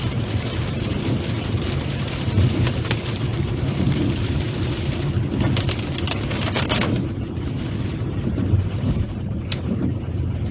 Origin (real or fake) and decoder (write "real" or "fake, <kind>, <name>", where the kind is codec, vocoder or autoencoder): fake, vocoder, BigVGAN v2